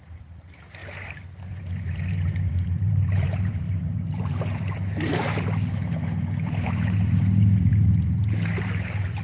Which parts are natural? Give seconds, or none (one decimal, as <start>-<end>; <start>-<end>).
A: 0.8-1.6; 7.7-8.6